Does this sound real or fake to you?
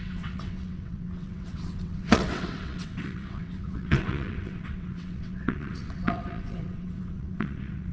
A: fake